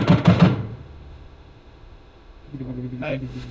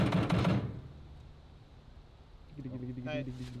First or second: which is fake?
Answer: first